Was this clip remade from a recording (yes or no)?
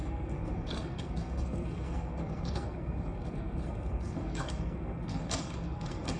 yes